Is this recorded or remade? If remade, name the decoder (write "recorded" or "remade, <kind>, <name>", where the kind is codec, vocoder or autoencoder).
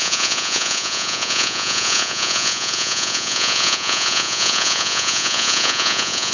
remade, vocoder, Vocos